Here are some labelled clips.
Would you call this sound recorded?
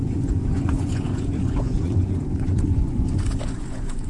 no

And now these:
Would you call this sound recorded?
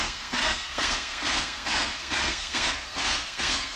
no